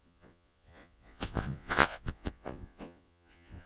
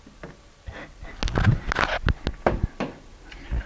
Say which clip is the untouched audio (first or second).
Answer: second